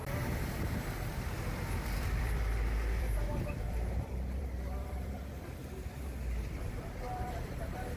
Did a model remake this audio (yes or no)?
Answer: yes